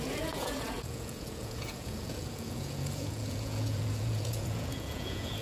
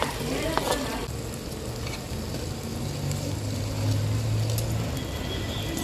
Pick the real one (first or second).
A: second